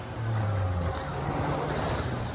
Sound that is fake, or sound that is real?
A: real